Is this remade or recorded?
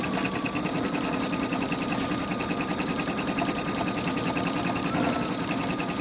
recorded